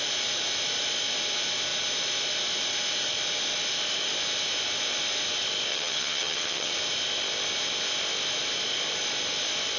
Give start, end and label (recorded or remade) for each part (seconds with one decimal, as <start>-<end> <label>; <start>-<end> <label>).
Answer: 0.0-5.7 recorded; 5.7-6.7 remade; 6.7-9.8 recorded

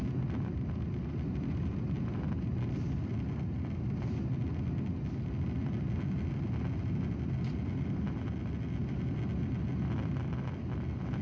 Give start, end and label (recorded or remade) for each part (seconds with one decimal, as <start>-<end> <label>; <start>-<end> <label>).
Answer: 0.0-11.2 recorded

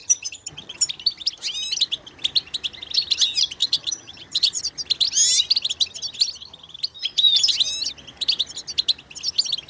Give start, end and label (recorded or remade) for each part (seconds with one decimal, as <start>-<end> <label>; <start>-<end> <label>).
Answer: 0.0-0.8 remade; 0.8-3.6 recorded; 3.6-4.6 remade; 4.6-9.7 recorded

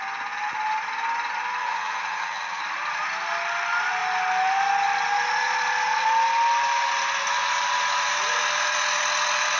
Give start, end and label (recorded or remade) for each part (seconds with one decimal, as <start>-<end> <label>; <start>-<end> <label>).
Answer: 0.0-1.6 recorded; 1.6-2.6 remade; 2.6-9.6 recorded

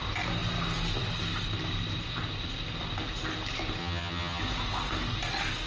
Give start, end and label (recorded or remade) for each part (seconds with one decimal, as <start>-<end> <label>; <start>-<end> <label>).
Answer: 0.0-3.8 recorded; 3.8-4.4 remade; 4.4-5.7 recorded

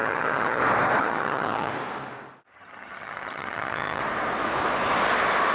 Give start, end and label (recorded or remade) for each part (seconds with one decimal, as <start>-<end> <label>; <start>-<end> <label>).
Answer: 0.0-0.6 remade; 0.6-1.0 recorded; 1.0-1.7 remade; 1.7-2.5 recorded; 2.5-4.0 remade; 4.0-5.5 recorded

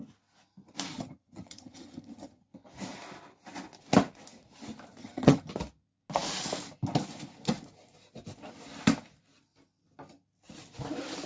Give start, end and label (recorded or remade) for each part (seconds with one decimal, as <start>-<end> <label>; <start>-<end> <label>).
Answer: 0.0-0.9 recorded; 0.9-2.4 remade; 2.4-5.0 recorded; 5.0-5.5 remade; 5.5-11.3 recorded